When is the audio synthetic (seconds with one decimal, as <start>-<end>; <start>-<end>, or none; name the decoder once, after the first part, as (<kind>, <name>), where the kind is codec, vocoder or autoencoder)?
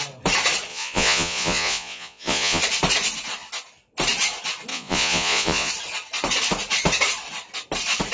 0.7-2.6 (vocoder, Vocos); 4.7-5.7